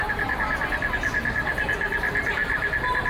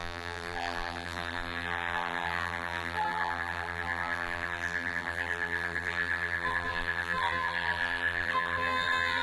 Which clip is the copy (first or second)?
second